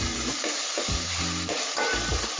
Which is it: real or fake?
fake